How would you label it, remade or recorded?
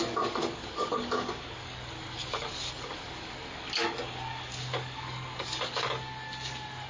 remade